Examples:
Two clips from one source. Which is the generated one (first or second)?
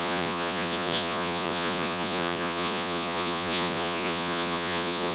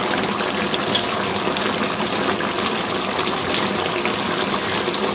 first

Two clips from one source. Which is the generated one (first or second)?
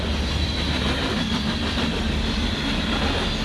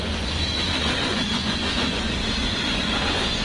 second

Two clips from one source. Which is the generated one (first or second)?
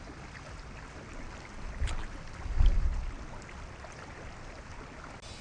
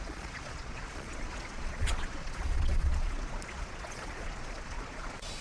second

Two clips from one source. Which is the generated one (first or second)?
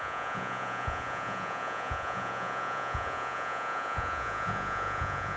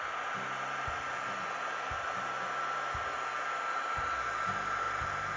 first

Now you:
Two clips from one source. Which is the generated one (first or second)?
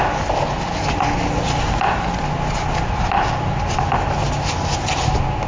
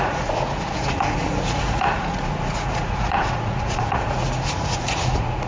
second